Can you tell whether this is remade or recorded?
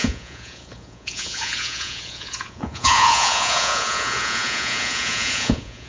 remade